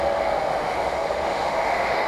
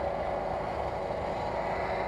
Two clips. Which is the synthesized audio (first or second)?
first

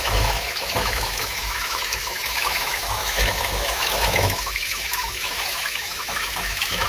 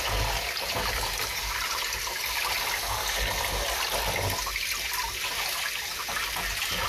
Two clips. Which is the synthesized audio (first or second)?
first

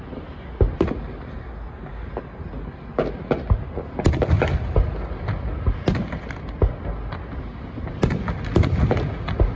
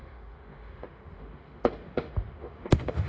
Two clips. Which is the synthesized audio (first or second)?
second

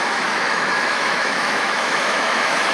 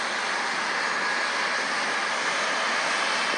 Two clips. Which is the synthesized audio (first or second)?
first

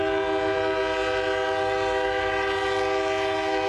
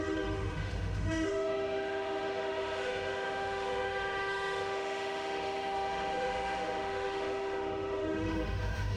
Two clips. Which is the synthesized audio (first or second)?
second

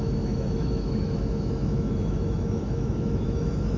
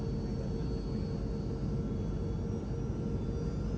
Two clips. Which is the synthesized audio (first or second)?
first